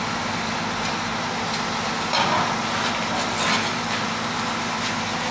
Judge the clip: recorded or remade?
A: recorded